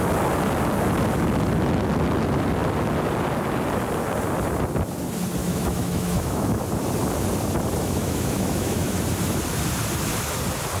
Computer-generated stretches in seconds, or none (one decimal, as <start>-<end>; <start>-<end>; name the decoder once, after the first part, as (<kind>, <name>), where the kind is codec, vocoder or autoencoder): 5.4-6.6 (autoencoder, DAC-VAE); 7.8-9.0